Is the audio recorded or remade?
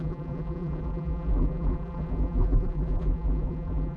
remade